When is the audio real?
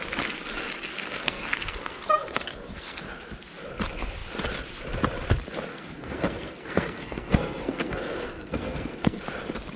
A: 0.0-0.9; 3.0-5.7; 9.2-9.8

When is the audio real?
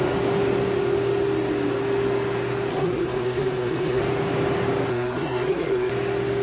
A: 0.0-2.7; 4.0-4.9; 5.9-6.4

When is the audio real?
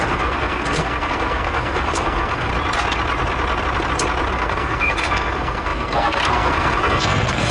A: 2.5-4.3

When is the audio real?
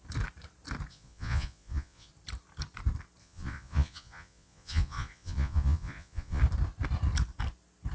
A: 0.0-0.9; 2.1-3.2; 6.4-7.9